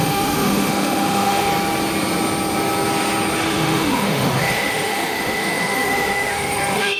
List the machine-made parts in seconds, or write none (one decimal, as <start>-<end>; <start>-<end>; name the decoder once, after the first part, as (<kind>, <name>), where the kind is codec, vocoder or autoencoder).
0.0-1.5 (autoencoder, DAC-VAE); 3.4-7.0